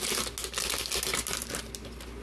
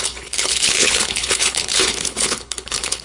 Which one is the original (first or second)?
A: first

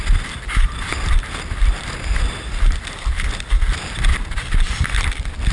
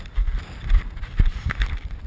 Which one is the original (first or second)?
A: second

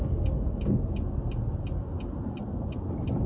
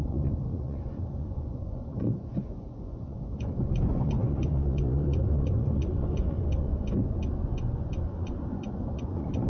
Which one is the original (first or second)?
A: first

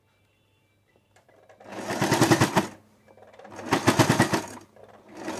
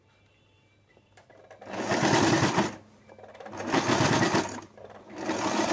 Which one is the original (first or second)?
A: first